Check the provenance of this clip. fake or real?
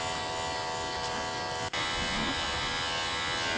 real